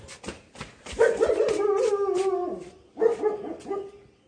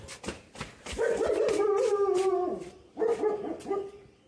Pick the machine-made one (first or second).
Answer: second